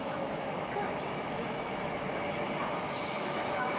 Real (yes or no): no